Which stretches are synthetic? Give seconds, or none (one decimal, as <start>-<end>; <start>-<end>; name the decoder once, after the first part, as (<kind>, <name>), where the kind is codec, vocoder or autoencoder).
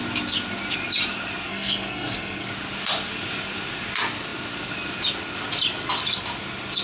1.5-2.5 (codec, SNAC)